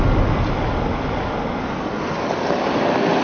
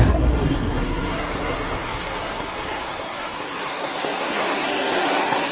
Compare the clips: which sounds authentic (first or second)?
first